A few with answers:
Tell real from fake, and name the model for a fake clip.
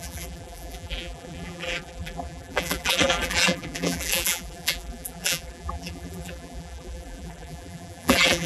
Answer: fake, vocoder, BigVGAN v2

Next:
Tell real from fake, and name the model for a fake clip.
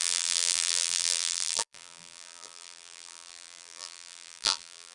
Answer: fake, vocoder, BigVGAN v2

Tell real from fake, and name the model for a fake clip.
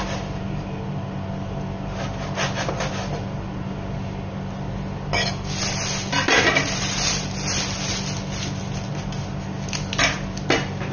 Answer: real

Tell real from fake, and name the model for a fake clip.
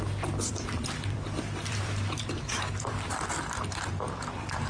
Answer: fake, vocoder, BigVGAN v2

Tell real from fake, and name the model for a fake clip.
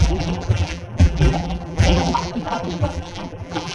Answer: fake, vocoder, BigVGAN v2